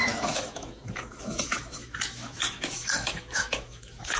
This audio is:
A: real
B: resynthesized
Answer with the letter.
B